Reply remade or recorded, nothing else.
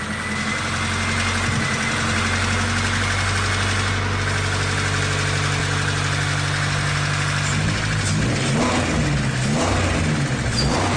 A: recorded